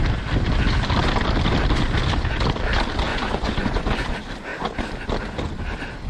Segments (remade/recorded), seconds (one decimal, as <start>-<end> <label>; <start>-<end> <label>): 0.0-3.1 recorded; 3.1-3.9 remade; 3.9-6.1 recorded